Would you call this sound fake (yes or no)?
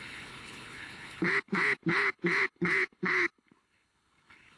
yes